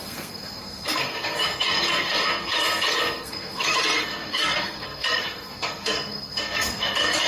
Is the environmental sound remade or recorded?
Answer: remade